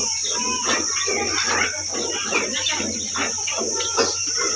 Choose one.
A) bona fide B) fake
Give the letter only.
A